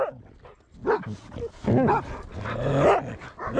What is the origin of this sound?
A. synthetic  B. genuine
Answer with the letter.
B